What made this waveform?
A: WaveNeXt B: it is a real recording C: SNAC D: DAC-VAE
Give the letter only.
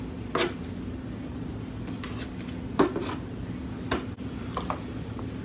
B